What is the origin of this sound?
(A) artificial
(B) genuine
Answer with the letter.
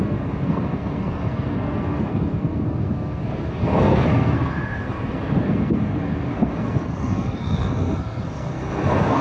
A